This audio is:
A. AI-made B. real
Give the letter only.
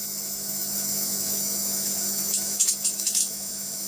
A